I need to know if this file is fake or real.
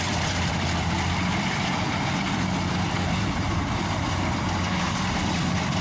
fake